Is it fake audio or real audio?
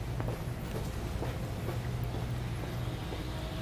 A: real